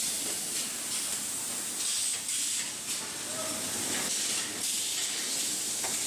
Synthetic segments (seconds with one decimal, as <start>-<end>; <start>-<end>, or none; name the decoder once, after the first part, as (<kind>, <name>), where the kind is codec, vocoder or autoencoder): none